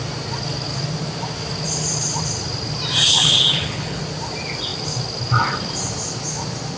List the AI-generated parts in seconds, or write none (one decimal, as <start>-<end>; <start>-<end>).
3.1-4.0